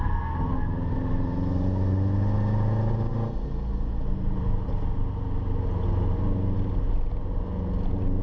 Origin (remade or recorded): recorded